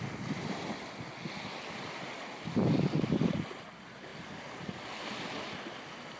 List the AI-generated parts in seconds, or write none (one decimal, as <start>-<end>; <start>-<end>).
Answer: none